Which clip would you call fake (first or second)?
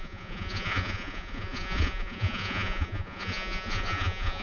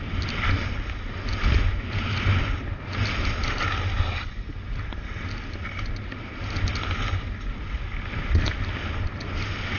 first